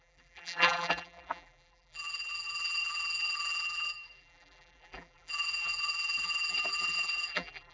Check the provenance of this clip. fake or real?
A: fake